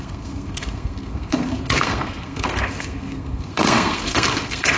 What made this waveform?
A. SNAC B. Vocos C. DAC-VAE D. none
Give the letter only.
A